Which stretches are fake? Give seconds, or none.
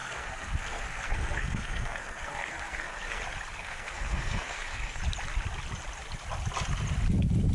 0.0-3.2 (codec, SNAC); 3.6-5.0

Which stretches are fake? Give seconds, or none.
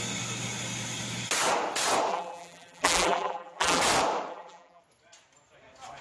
2.1-3.8 (vocoder, BigVGAN v2); 4.3-4.8